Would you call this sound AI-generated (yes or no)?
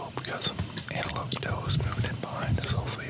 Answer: no